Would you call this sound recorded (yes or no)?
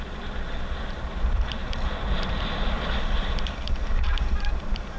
no